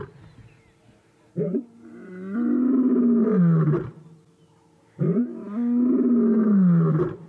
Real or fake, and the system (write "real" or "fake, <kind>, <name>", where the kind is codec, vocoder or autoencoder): real